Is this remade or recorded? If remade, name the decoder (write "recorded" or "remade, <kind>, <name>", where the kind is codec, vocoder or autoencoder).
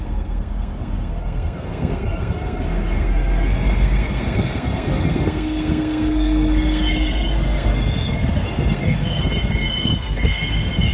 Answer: remade, codec, SNAC